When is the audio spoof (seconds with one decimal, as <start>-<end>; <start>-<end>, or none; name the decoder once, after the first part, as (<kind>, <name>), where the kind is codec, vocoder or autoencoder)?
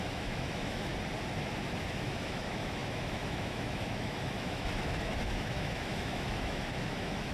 0.0-0.9 (autoencoder, DAC-VAE); 1.9-7.3